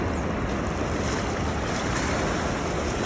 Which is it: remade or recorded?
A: recorded